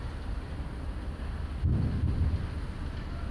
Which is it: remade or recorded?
recorded